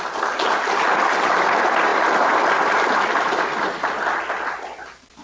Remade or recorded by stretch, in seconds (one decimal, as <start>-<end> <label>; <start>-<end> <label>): 0.0-5.2 recorded